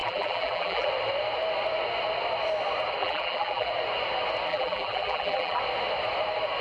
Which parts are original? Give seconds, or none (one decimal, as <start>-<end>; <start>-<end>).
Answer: 0.9-3.0; 3.7-4.5; 5.6-6.6